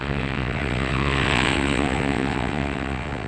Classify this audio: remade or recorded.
remade